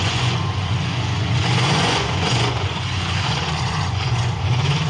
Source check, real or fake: fake